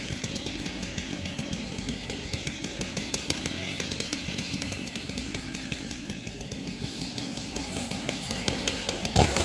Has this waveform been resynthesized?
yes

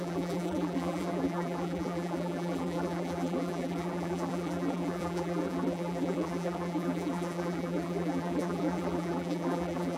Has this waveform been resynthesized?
yes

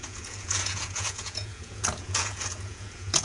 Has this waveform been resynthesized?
yes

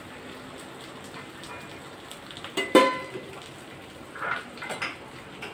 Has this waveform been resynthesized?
no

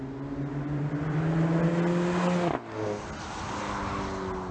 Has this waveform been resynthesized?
no